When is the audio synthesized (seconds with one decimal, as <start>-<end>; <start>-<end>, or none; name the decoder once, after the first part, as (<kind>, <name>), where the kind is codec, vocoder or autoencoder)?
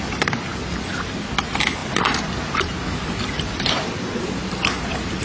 none